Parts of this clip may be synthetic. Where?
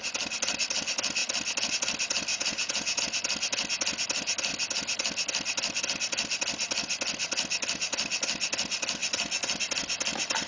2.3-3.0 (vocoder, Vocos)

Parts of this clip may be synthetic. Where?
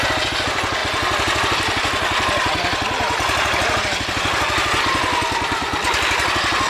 none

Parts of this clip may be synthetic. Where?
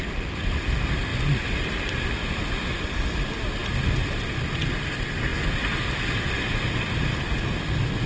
none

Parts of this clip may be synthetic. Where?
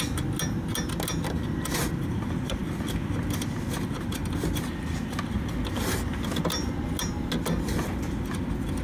none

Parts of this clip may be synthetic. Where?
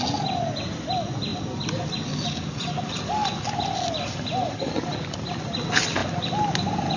none